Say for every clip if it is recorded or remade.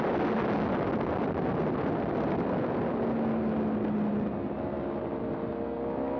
recorded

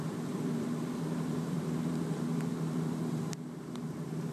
remade